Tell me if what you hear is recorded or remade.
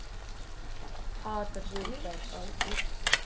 recorded